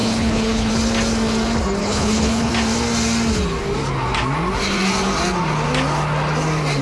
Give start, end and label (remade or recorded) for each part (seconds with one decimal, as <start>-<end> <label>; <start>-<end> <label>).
0.0-0.7 remade; 0.7-1.8 recorded; 1.8-2.5 remade; 2.5-6.8 recorded